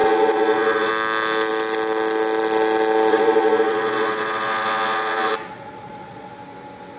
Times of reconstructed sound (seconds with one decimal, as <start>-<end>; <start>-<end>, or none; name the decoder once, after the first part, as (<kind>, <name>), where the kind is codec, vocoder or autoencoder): 0.0-0.9 (vocoder, Vocos); 3.1-6.3